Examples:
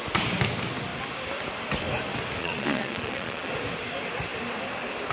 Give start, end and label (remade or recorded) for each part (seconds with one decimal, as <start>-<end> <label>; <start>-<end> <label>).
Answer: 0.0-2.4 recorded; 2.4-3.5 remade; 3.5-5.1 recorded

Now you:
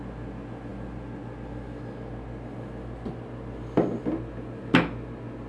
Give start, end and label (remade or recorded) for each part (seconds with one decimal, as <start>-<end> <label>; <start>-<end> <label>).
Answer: 0.0-5.5 recorded

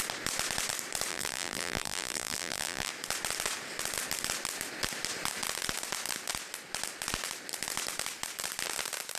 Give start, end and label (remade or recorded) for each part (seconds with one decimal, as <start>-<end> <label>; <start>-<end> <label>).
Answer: 0.0-1.1 recorded; 1.1-2.9 remade; 2.9-9.2 recorded